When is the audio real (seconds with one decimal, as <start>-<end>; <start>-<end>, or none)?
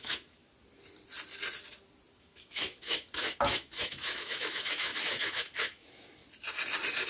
0.4-2.2; 6.2-7.1